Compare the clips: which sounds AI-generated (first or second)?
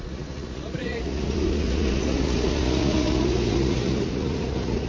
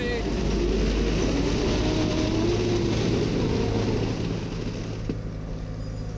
first